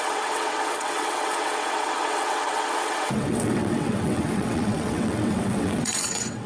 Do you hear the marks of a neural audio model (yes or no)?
yes